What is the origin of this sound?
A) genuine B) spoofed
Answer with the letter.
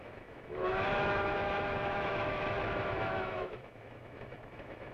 B